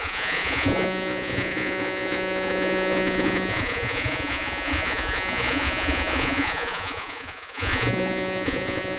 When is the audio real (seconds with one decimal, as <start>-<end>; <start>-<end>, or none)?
none